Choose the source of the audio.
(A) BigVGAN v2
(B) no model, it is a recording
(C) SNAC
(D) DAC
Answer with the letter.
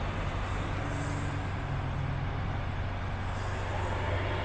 B